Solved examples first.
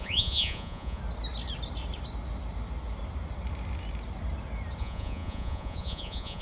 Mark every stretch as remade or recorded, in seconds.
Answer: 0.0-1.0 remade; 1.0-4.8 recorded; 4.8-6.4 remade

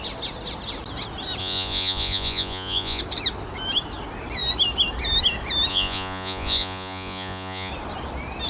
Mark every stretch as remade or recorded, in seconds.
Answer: 0.0-1.4 recorded; 1.4-3.0 remade; 3.0-5.7 recorded; 5.7-7.7 remade; 7.7-8.5 recorded

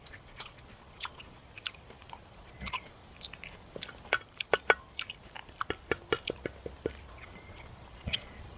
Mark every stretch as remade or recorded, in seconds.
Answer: 0.0-1.4 remade; 1.4-2.3 recorded; 2.3-3.0 remade; 3.0-7.1 recorded; 7.1-8.6 remade